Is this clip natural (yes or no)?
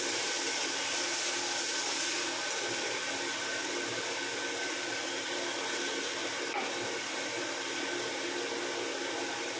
yes